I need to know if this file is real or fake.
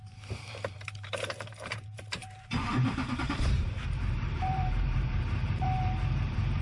fake